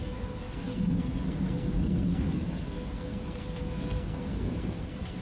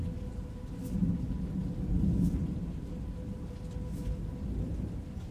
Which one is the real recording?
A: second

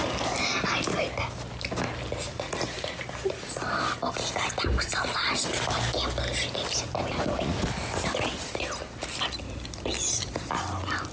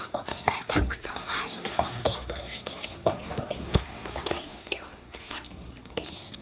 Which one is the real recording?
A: first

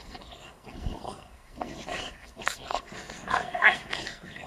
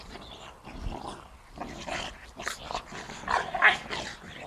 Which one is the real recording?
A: second